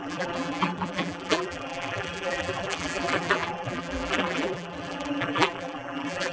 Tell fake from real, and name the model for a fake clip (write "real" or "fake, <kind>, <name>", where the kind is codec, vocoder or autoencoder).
fake, vocoder, BigVGAN v2